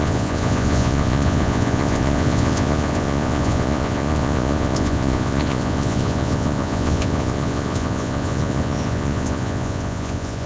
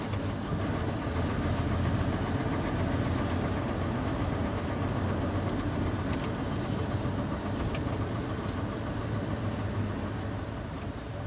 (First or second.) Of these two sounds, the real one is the second